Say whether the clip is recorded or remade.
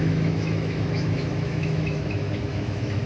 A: remade